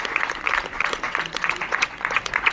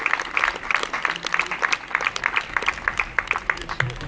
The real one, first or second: second